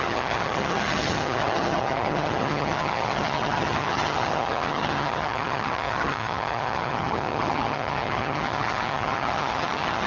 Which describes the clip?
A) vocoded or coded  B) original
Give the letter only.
A